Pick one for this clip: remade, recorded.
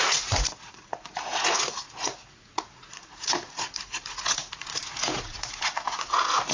remade